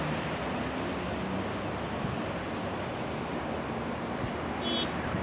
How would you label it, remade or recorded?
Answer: recorded